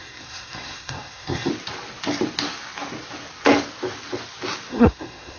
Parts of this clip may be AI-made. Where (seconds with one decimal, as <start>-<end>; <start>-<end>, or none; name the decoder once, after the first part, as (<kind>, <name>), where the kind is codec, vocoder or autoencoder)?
0.0-1.5 (codec, SNAC); 4.7-5.4